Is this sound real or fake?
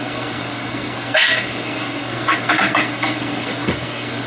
fake